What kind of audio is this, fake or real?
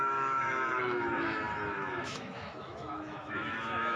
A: fake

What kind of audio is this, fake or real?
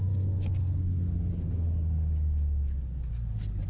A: real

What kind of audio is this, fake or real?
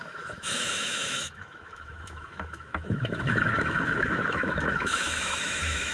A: fake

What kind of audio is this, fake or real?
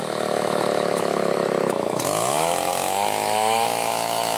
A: fake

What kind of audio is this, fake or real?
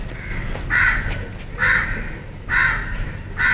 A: real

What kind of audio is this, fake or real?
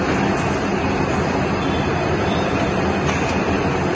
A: real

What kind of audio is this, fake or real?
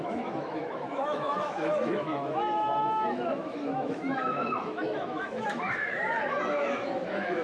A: fake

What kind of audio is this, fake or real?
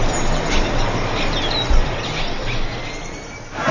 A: real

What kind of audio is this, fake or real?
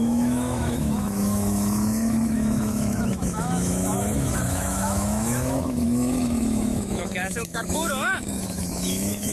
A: fake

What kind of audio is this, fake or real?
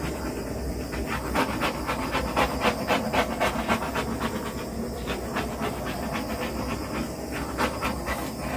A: real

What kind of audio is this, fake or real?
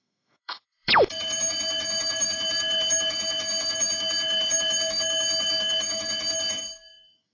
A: fake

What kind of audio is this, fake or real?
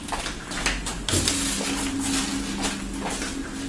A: real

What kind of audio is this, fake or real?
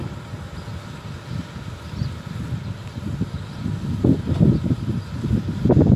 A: real